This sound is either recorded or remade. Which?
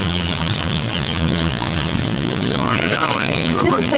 remade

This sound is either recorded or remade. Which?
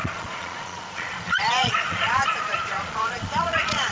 remade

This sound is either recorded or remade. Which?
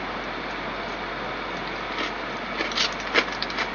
recorded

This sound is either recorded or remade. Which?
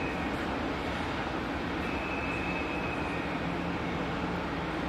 recorded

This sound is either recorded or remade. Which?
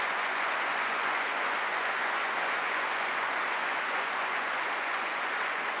remade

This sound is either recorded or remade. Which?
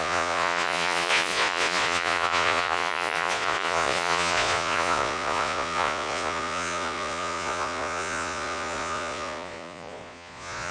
remade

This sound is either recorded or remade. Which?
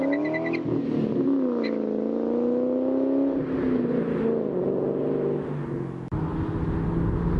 recorded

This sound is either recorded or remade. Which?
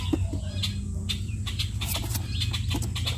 recorded